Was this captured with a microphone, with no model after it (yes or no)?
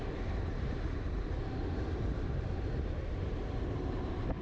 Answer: no